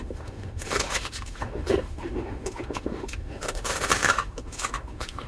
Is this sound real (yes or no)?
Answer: no